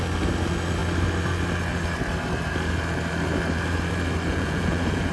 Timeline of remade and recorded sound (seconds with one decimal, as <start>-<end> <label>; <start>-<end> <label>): 0.0-4.3 recorded; 4.3-5.1 remade